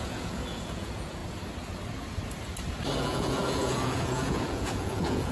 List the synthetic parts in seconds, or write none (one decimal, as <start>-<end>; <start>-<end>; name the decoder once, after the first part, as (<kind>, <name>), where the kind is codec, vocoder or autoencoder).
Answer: 0.0-1.2 (vocoder, Vocos); 3.0-5.3